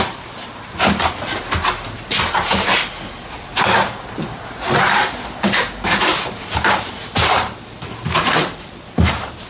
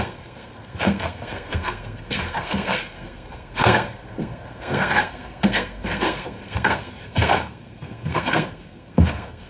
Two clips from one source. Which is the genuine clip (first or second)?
first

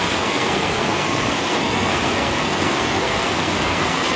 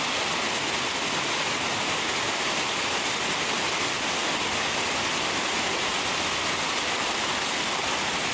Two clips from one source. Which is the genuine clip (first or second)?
second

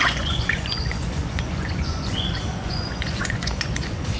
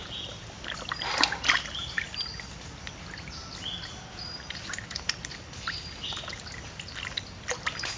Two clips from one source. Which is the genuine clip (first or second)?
second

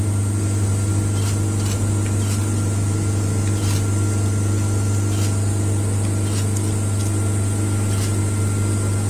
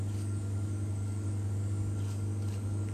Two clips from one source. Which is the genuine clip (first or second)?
first